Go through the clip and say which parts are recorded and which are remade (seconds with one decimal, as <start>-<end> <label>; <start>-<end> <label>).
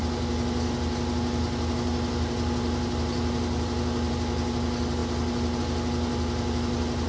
0.0-7.1 recorded